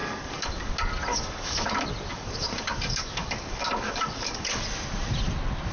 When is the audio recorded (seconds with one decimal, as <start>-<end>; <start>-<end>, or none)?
0.7-1.1; 1.7-2.1; 4.6-5.7